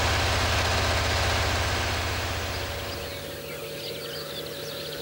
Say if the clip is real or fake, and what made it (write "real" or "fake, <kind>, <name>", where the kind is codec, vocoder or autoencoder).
real